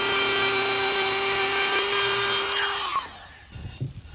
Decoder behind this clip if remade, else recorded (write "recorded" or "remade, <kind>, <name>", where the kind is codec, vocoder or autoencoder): recorded